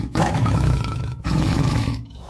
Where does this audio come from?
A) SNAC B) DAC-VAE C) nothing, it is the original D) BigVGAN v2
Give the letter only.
B